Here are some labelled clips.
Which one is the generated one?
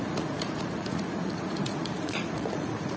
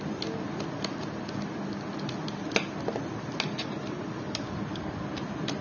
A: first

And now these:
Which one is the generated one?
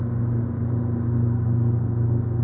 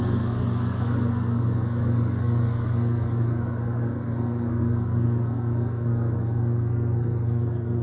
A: second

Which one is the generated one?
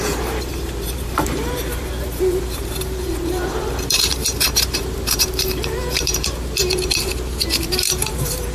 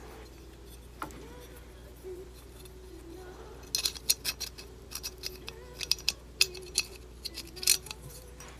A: first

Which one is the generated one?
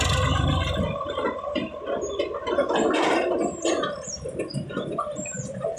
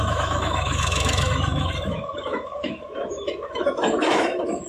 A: second